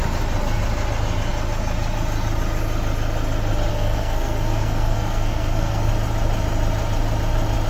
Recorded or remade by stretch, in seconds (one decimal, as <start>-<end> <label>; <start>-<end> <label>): 0.0-3.7 recorded; 3.7-5.9 remade; 5.9-7.7 recorded